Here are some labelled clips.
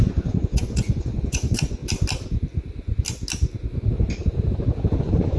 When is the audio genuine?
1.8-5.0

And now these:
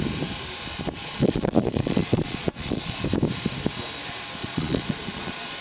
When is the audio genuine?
0.0-1.0; 3.0-4.4

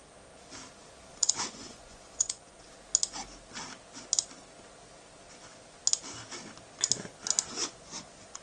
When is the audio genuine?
0.0-1.1; 2.5-7.5

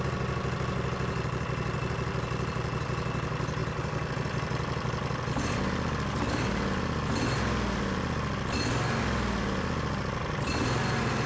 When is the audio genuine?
0.0-11.3

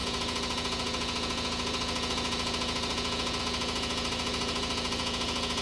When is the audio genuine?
none